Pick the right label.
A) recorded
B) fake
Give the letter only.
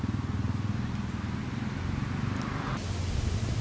A